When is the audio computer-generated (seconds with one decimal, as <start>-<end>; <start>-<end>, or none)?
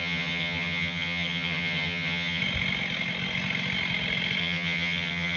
0.0-2.4; 4.4-5.4